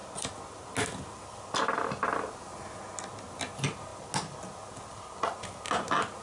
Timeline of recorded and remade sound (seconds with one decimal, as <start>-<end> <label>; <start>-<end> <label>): 0.0-6.2 recorded